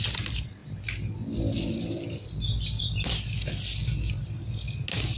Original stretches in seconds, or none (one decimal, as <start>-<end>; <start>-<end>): 0.0-5.2